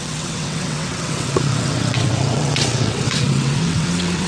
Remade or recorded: remade